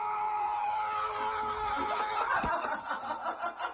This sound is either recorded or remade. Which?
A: recorded